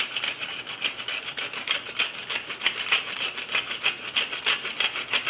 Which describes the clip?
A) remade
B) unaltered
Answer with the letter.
B